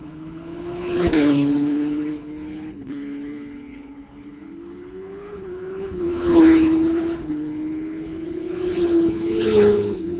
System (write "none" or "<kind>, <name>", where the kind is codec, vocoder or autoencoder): codec, HILCodec